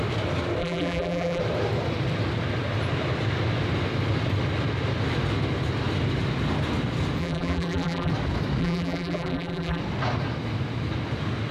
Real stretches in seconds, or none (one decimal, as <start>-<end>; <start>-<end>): 0.0-0.6; 1.4-7.2; 8.1-8.6; 9.8-11.5